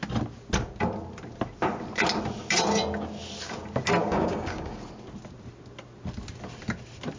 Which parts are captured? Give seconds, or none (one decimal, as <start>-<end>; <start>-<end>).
0.0-4.0; 4.8-7.2